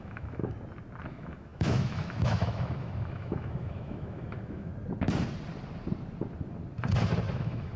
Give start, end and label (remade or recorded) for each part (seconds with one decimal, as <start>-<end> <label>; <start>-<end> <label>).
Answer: 0.0-0.4 remade; 0.4-1.1 recorded; 1.1-4.7 remade; 4.7-7.3 recorded; 7.3-7.8 remade